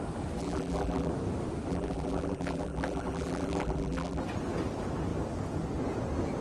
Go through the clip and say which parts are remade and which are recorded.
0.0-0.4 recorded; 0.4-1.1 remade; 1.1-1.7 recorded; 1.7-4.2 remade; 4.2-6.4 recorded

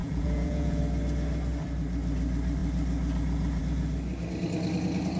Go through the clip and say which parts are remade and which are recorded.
0.0-0.8 remade; 0.8-5.2 recorded

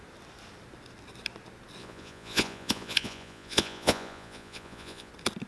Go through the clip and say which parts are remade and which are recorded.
0.0-1.8 recorded; 1.8-5.1 remade; 5.1-5.5 recorded

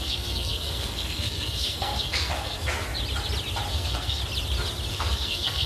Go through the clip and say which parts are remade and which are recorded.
0.0-2.9 remade; 2.9-3.7 recorded; 3.7-4.2 remade; 4.2-4.9 recorded; 4.9-5.7 remade

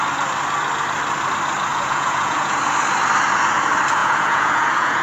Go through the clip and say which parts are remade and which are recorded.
0.0-1.7 recorded; 1.7-2.6 remade; 2.6-4.0 recorded; 4.0-5.0 remade